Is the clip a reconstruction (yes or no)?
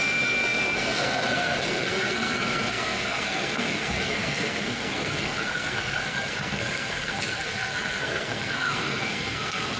yes